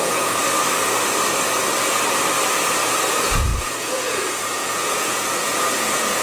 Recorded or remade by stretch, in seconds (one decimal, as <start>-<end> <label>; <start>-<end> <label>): 0.0-0.4 remade; 0.4-3.1 recorded; 3.1-6.2 remade